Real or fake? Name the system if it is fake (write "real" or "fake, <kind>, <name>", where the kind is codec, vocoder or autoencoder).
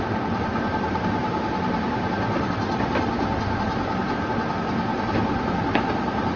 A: fake, vocoder, BigVGAN v2